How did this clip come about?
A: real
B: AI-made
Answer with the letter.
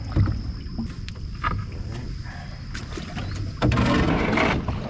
A